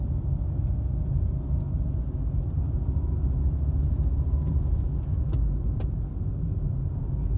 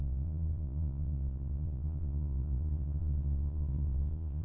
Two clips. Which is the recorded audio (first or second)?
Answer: first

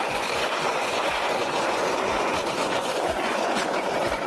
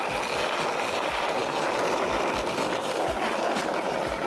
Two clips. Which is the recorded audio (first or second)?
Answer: second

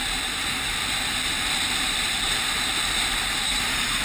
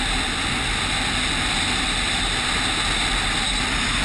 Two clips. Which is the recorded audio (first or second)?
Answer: second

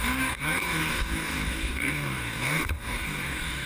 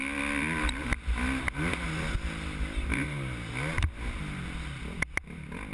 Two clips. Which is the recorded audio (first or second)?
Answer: second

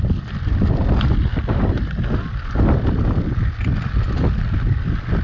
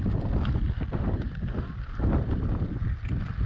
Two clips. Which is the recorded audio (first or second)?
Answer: first